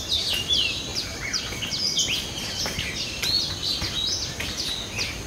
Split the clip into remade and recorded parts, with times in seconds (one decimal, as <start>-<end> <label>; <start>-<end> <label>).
0.0-5.3 recorded